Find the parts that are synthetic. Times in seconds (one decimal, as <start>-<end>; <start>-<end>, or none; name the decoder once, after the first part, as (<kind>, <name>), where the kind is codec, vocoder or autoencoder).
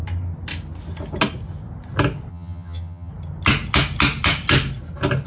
2.3-3.1 (vocoder, HiFi-GAN)